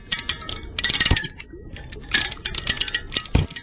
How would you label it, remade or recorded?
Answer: recorded